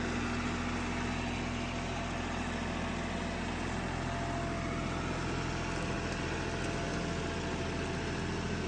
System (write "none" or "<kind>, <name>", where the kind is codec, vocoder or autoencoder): none